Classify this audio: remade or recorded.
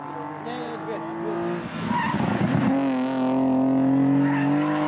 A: recorded